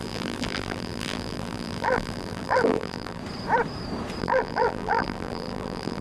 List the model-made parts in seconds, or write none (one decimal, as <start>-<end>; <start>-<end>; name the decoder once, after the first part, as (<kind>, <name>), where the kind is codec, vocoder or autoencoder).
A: 0.0-3.2 (vocoder, BigVGAN v2); 4.2-6.0